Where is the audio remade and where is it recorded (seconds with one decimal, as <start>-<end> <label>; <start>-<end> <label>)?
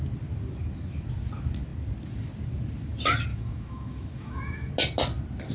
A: 0.0-3.3 recorded; 3.3-4.7 remade; 4.7-5.5 recorded